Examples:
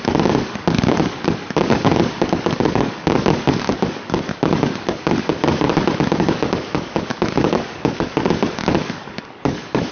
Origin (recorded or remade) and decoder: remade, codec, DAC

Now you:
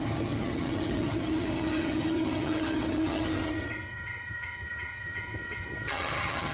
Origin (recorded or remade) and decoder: remade, vocoder, HiFi-GAN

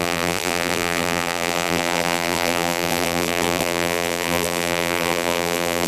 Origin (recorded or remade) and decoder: remade, vocoder, BigVGAN v2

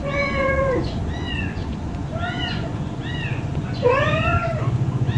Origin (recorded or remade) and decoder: remade, vocoder, Vocos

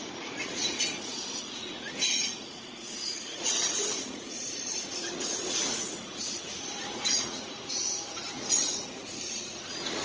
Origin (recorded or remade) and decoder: remade, vocoder, Vocos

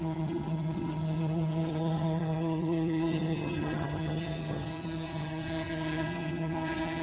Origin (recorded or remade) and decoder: remade, vocoder, HiFi-GAN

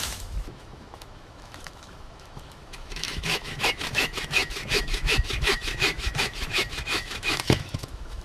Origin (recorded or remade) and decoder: remade, autoencoder, DAC-VAE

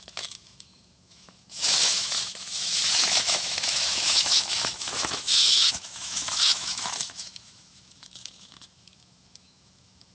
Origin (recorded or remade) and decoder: remade, autoencoder, DAC-VAE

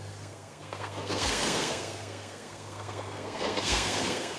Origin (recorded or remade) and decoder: remade, codec, SNAC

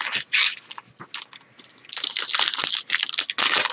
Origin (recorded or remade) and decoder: recorded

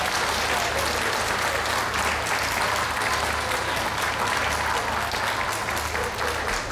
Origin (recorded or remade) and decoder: recorded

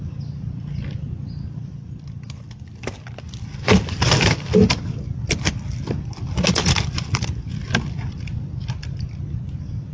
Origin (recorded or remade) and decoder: recorded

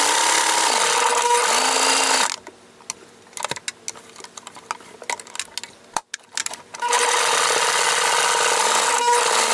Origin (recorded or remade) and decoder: recorded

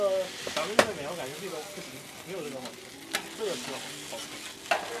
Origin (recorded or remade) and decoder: recorded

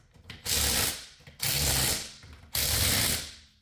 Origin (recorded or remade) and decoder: recorded